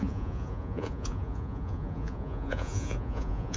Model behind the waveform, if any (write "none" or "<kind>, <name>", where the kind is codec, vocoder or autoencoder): vocoder, Vocos